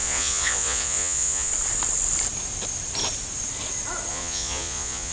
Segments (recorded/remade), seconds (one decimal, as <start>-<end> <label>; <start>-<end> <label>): 0.0-1.5 remade; 1.5-4.1 recorded; 4.1-5.1 remade